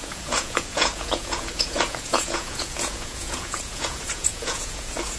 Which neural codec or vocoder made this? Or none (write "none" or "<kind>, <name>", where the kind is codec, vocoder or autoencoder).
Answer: vocoder, Vocos